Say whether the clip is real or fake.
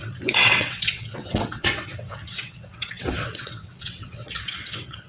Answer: fake